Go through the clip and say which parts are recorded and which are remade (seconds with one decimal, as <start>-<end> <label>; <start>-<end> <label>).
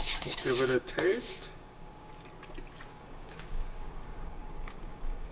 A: 0.0-2.1 remade; 2.1-2.9 recorded; 2.9-5.3 remade